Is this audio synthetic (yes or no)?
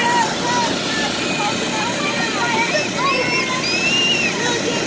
no